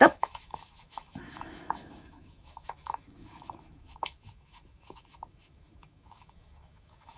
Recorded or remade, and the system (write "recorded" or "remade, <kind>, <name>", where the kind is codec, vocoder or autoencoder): remade, autoencoder, DAC-VAE